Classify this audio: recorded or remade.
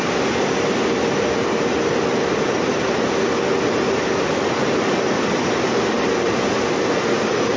recorded